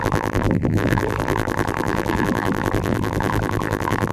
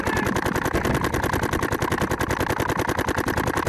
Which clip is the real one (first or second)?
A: second